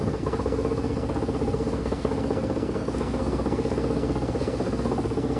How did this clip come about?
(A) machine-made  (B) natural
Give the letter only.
A